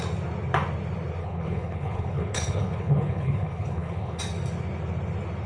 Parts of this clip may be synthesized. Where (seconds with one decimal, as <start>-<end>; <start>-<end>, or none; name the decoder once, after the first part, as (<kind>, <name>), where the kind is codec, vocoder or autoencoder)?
1.2-4.2 (codec, HILCodec)